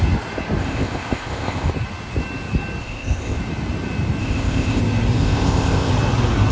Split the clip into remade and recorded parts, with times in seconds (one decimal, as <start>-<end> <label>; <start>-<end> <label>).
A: 0.0-0.6 recorded; 0.6-1.7 remade; 1.7-2.8 recorded; 2.8-3.4 remade; 3.4-4.2 recorded; 4.2-4.8 remade; 4.8-5.2 recorded; 5.2-5.9 remade; 5.9-6.5 recorded